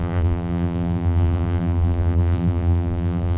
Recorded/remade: remade